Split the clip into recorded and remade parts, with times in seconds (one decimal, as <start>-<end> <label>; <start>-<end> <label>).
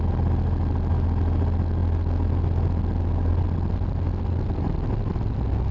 0.0-5.7 recorded